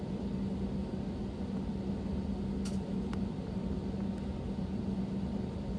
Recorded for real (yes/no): yes